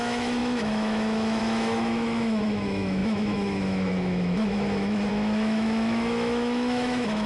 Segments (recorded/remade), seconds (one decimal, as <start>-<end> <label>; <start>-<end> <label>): 0.0-7.3 remade